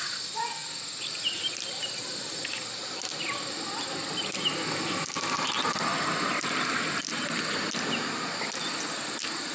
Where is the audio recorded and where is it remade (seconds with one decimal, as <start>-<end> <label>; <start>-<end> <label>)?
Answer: 0.0-0.6 recorded; 0.6-1.7 remade; 1.7-3.1 recorded; 3.1-3.9 remade; 3.9-5.9 recorded; 5.9-7.1 remade; 7.1-9.5 recorded